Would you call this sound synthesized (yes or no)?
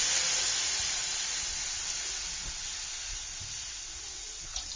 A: no